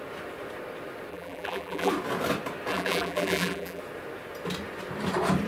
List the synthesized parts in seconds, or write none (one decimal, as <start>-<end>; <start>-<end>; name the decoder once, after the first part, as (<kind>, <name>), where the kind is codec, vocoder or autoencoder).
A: 1.1-1.9 (vocoder, BigVGAN v2); 2.7-3.8